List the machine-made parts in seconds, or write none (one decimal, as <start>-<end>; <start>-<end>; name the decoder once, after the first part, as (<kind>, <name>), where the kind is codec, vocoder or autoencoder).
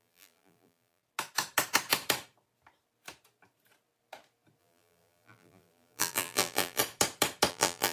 0.0-1.0 (vocoder, BigVGAN v2); 4.6-6.8; 7.5-7.9